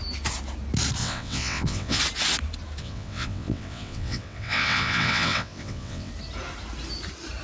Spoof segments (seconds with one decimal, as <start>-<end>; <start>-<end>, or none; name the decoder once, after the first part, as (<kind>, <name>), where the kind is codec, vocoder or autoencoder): 1.0-2.0 (vocoder, WaveNeXt); 2.8-6.1